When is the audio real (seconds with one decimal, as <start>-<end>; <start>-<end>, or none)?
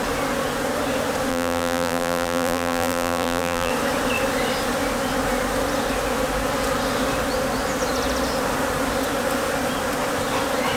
0.0-1.3; 3.7-10.8